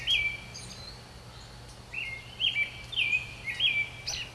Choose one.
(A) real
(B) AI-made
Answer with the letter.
A